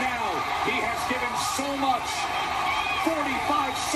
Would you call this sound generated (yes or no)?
no